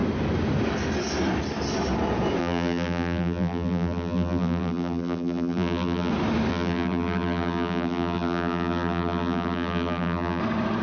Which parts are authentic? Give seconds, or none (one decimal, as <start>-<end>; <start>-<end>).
0.0-2.4; 6.1-6.5; 10.4-10.8